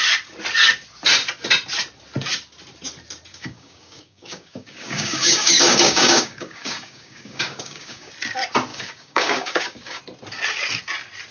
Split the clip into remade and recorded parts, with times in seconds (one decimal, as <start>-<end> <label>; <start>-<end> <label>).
0.0-3.3 recorded; 3.3-8.1 remade; 8.1-8.7 recorded; 8.7-10.0 remade; 10.0-11.3 recorded